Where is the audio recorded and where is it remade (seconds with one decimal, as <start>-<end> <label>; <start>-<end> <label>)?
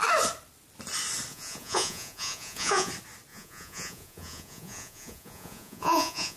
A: 0.0-1.3 recorded; 1.3-2.9 remade; 2.9-3.3 recorded; 3.3-6.4 remade